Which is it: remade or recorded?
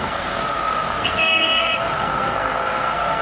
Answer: remade